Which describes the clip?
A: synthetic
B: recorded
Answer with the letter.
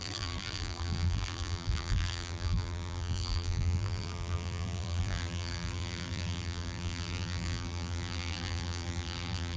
A